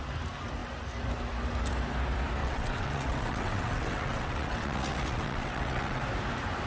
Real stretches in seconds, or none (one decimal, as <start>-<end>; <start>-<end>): 0.0-2.4; 6.0-6.7